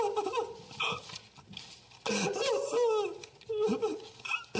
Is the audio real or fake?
real